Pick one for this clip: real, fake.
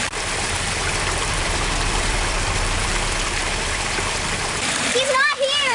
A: fake